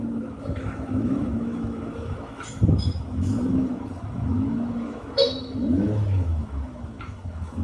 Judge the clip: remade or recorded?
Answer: remade